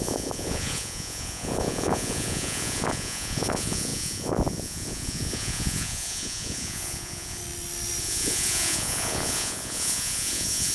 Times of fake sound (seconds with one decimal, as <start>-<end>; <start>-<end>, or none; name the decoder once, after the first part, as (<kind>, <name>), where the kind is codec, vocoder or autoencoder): 0.0-7.4 (vocoder, Vocos); 8.0-10.7